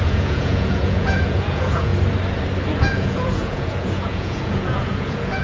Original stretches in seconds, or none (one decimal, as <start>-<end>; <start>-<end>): 1.9-2.8

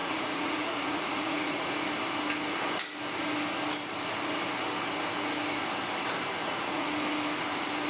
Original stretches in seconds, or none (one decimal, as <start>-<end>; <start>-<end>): 1.7-6.4; 6.9-7.9

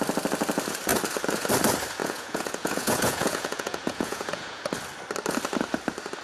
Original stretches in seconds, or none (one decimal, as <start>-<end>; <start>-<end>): 0.0-2.0; 4.7-6.2

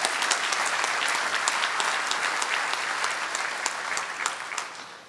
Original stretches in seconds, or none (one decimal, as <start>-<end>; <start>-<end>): 0.0-5.1

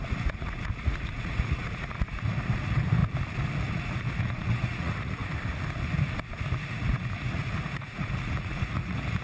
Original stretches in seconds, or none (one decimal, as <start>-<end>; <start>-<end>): 3.0-3.6; 5.2-6.7

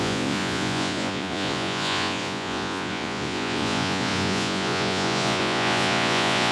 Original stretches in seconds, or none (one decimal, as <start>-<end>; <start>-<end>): none

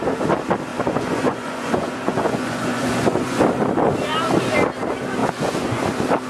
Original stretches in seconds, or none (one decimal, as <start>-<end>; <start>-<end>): 0.0-0.7; 3.4-5.2; 5.8-6.3